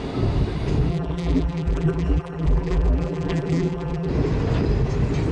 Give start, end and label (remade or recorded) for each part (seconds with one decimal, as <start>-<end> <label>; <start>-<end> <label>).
0.0-0.9 recorded; 0.9-4.1 remade; 4.1-5.3 recorded